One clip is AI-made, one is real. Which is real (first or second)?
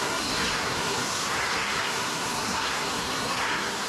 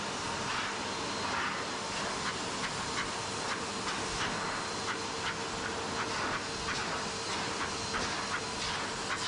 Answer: second